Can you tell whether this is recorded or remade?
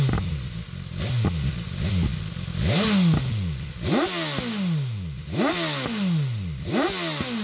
recorded